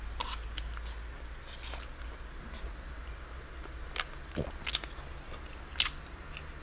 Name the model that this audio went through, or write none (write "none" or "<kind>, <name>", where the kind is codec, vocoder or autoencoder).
none